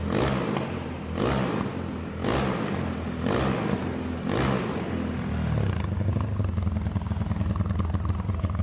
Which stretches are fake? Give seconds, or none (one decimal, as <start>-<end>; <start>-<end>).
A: none